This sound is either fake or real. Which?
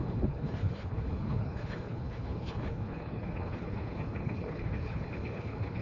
fake